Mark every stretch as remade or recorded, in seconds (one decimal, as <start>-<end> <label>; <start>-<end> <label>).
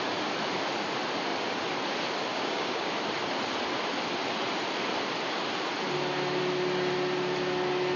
0.0-2.3 recorded; 2.3-2.9 remade; 2.9-8.0 recorded